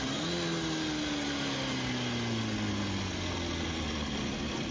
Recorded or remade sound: recorded